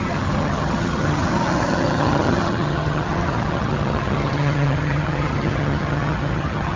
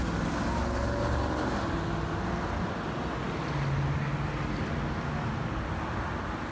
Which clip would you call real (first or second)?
second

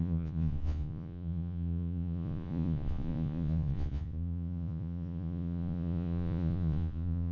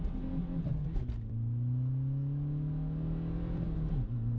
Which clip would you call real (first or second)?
second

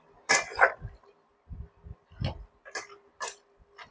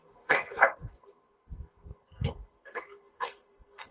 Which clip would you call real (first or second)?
first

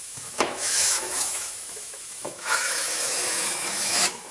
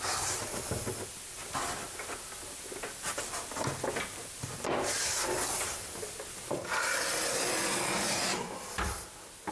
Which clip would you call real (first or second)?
second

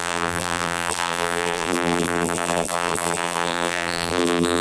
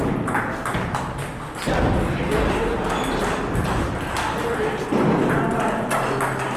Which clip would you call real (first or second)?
second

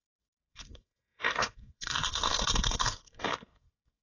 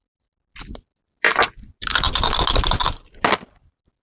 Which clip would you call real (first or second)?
second